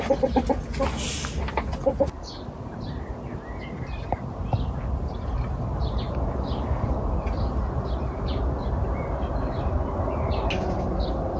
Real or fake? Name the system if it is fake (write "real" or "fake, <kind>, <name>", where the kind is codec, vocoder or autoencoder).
real